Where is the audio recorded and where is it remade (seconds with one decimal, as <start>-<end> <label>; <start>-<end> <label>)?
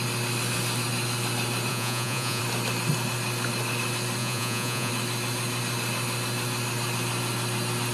0.0-1.7 recorded; 1.7-2.4 remade; 2.4-4.2 recorded; 4.2-4.9 remade; 4.9-7.9 recorded